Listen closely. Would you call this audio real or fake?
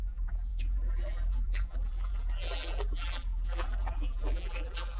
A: fake